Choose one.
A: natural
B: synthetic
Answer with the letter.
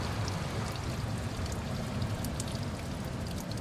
A